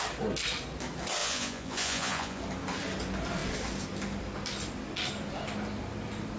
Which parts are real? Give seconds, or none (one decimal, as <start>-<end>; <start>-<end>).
0.0-1.2; 2.4-6.4